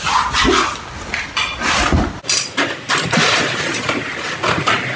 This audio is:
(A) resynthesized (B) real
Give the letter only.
B